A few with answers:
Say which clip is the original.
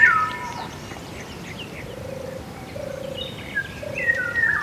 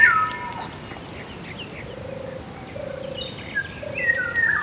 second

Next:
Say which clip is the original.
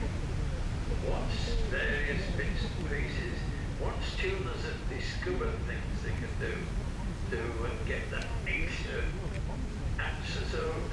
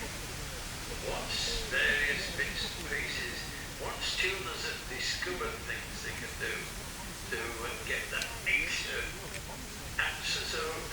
second